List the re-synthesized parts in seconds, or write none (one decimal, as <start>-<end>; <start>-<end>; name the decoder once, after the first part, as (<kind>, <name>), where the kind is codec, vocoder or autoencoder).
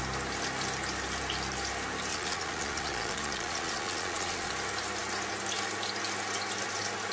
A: 2.1-4.5 (vocoder, Vocos)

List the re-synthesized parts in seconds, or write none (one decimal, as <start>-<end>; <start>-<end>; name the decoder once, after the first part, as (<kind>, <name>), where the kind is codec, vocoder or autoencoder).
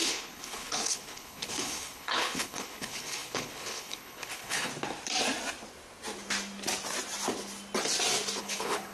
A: 0.0-4.7 (codec, HILCodec); 8.4-8.9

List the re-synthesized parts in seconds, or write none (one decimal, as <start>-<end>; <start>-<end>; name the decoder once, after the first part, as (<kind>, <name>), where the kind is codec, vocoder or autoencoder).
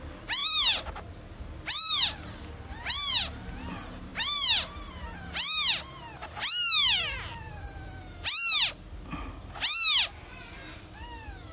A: none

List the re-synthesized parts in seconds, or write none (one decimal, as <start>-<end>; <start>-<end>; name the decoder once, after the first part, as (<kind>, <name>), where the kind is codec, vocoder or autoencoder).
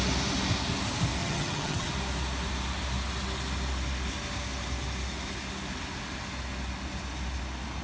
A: 1.2-1.9 (vocoder, HiFi-GAN)